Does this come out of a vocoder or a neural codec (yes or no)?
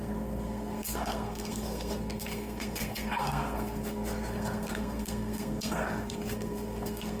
yes